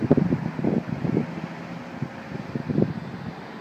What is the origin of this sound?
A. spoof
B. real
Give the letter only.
B